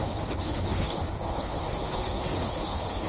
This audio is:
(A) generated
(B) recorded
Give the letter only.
A